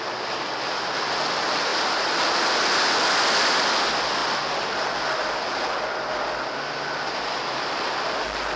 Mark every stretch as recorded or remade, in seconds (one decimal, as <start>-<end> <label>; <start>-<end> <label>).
0.0-8.6 recorded